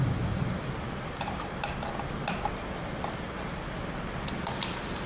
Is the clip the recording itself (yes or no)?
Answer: yes